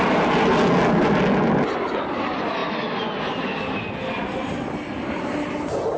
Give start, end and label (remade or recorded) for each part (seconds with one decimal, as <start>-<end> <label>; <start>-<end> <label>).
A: 0.0-6.0 recorded